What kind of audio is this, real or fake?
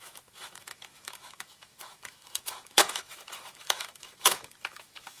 fake